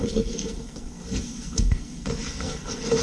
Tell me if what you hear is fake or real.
fake